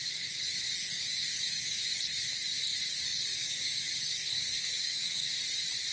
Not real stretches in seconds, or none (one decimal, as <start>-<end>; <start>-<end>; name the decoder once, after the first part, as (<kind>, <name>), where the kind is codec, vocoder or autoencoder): 1.3-2.0 (codec, DAC); 3.3-5.3

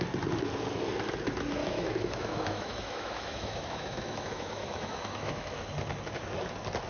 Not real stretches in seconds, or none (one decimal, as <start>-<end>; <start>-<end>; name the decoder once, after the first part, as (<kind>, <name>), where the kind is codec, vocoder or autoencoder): 1.6-5.7 (autoencoder, DAC-VAE)

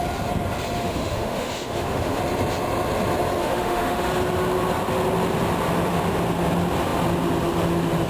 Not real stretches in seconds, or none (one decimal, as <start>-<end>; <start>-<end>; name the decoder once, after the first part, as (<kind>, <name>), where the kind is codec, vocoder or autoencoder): 0.8-2.2 (autoencoder, DAC-VAE); 3.4-4.1